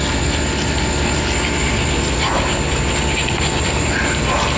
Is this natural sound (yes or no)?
yes